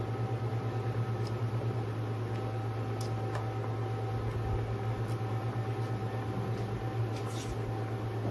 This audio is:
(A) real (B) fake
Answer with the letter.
A